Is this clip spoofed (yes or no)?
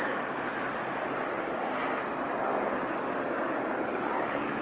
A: no